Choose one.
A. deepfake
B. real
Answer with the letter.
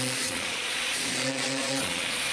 A